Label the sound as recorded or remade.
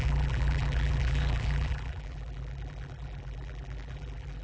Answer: remade